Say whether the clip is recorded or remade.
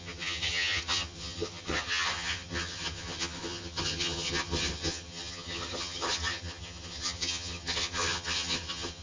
remade